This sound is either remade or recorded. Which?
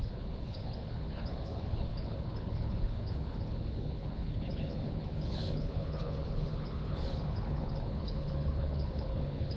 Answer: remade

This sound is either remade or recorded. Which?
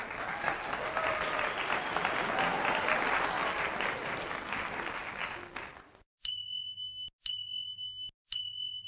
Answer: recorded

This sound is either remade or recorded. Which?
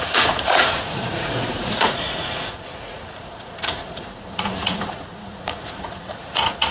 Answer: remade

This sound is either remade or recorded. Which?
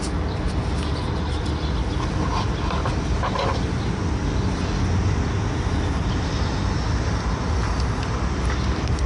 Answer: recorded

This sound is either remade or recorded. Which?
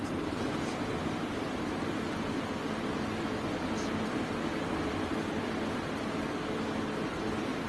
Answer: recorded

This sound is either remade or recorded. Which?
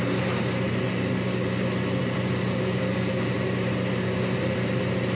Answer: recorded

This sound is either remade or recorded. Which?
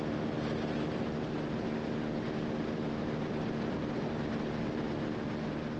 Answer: recorded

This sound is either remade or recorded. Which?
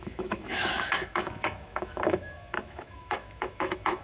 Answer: remade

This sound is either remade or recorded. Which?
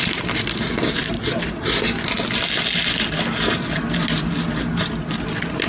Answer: recorded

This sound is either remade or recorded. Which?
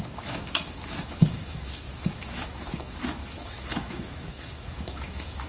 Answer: remade